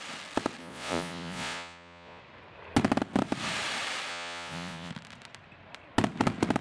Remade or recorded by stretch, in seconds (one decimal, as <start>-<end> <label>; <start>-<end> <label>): 0.0-0.6 recorded; 0.6-2.2 remade; 2.2-4.1 recorded; 4.1-4.9 remade; 4.9-6.6 recorded